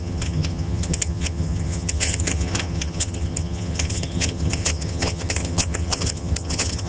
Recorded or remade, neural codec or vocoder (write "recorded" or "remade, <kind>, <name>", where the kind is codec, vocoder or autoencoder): remade, vocoder, HiFi-GAN